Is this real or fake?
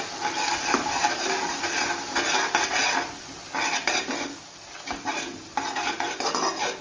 real